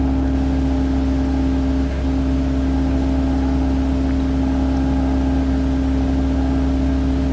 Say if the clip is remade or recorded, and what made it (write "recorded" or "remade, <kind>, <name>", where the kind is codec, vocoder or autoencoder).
recorded